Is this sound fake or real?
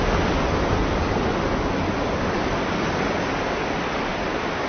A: real